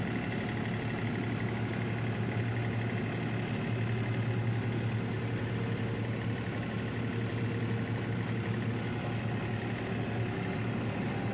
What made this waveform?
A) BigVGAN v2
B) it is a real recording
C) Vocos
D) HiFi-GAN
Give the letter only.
B